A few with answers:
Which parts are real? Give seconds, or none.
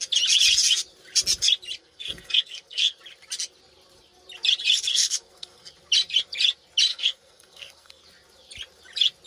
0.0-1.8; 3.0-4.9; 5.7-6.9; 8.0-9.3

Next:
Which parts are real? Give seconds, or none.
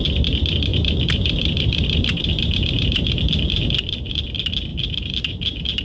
0.0-0.7; 4.2-4.7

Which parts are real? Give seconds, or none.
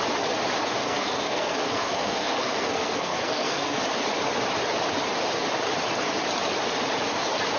0.0-0.8; 3.8-7.6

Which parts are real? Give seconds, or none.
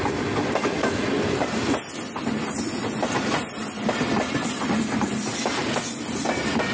0.0-6.7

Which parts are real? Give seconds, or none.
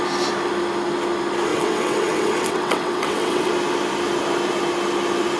0.0-1.5; 3.5-5.4